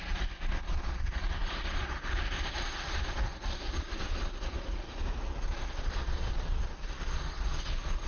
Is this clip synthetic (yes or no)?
yes